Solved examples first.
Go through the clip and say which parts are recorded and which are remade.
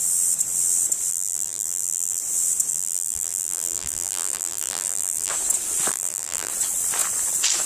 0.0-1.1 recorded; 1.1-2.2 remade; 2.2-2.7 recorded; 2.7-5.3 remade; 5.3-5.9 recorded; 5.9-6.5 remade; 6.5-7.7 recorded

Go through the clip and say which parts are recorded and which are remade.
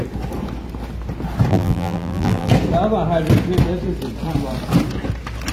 0.0-1.5 recorded; 1.5-2.5 remade; 2.5-5.5 recorded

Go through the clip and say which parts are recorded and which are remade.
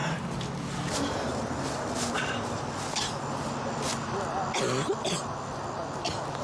0.0-6.4 recorded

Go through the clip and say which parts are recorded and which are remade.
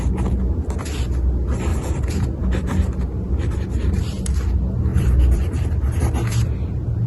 0.0-1.7 recorded; 1.7-2.4 remade; 2.4-4.9 recorded; 4.9-6.0 remade; 6.0-7.1 recorded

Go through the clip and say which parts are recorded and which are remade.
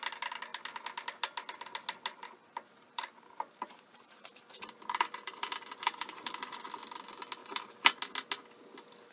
0.0-2.4 recorded; 2.4-6.6 remade; 6.6-7.4 recorded; 7.4-8.0 remade; 8.0-9.1 recorded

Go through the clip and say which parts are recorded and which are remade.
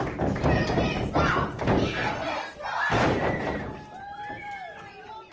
0.0-2.0 recorded; 2.0-5.3 remade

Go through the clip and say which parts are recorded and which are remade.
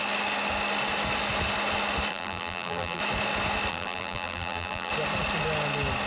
0.0-2.1 recorded; 2.1-3.0 remade; 3.0-3.7 recorded; 3.7-4.9 remade; 4.9-6.1 recorded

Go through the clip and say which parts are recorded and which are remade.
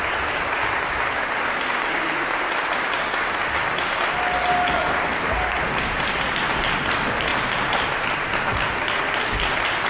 0.0-7.3 recorded; 7.3-7.8 remade; 7.8-9.9 recorded